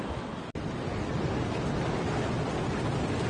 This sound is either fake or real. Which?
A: real